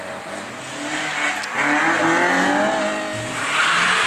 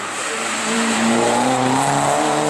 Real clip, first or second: first